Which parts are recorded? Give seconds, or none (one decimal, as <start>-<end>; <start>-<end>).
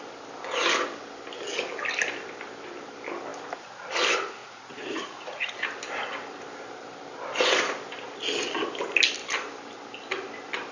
0.0-4.4; 5.5-10.7